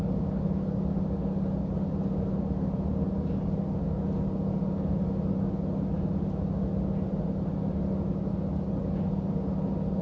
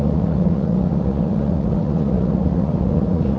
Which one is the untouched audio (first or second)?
first